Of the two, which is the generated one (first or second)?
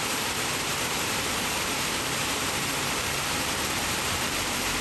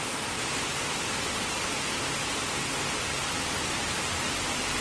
first